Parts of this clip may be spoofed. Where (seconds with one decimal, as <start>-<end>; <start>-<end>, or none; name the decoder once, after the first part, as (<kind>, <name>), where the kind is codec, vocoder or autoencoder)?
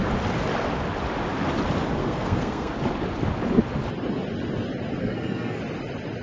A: 2.0-2.7 (codec, SNAC); 5.0-5.6